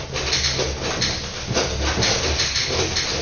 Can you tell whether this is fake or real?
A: real